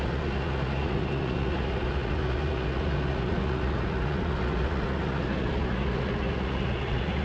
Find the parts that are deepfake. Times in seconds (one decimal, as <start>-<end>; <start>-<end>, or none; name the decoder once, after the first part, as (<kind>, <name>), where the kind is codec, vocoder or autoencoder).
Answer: 0.0-7.2 (vocoder, Vocos)